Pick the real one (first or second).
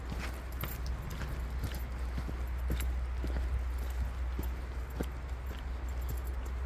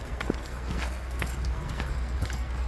first